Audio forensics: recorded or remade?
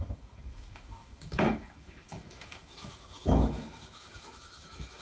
remade